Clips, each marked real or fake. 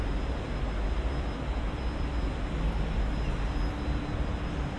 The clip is real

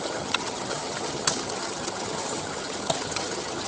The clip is fake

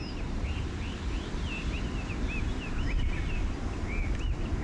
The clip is real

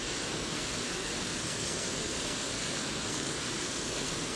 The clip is fake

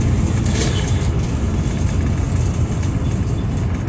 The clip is real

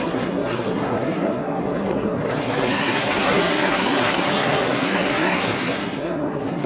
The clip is fake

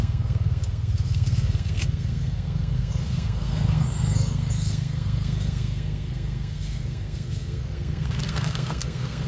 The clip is fake